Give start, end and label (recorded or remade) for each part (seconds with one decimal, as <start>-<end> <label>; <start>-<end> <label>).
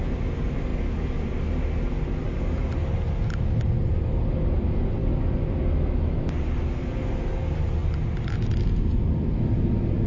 0.0-7.8 recorded; 7.8-8.6 remade; 8.6-10.1 recorded